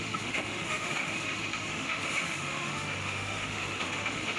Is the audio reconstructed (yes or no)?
yes